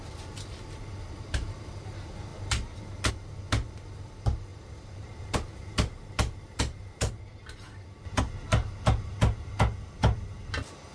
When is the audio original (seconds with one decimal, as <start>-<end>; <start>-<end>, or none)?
0.0-4.5; 7.1-10.9